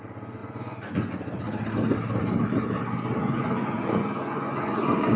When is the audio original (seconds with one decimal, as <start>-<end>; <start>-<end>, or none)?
0.0-0.4; 1.1-3.2